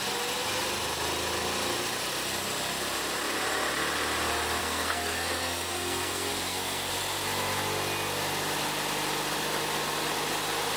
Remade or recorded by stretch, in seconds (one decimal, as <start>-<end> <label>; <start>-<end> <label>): 0.0-4.6 recorded; 4.6-6.9 remade; 6.9-10.8 recorded